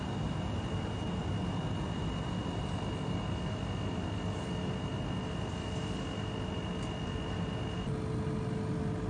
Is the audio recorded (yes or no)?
yes